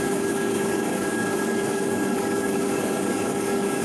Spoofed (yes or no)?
yes